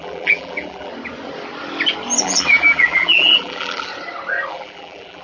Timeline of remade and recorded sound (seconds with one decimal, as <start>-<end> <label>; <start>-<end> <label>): 0.0-0.9 remade; 0.9-2.2 recorded; 2.2-3.9 remade; 3.9-4.5 recorded; 4.5-5.2 remade